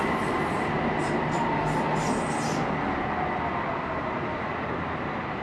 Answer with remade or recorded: recorded